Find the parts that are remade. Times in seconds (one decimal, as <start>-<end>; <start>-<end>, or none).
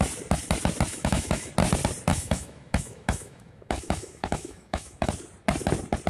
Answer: 0.9-1.5; 2.1-5.1